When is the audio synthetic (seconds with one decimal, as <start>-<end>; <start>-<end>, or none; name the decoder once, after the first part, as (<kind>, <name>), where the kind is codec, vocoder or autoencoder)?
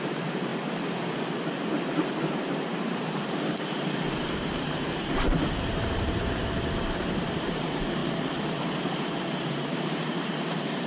0.0-0.5 (vocoder, BigVGAN v2); 2.2-8.0; 9.2-10.9